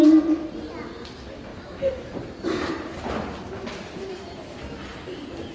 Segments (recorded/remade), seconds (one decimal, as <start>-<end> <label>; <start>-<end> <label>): 0.0-1.5 recorded; 1.5-3.3 remade; 3.3-4.9 recorded; 4.9-5.5 remade